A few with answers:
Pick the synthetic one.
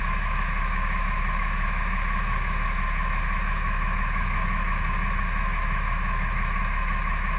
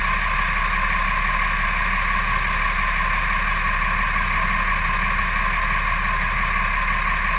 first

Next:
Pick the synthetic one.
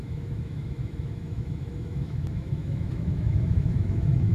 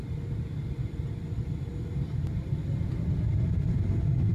first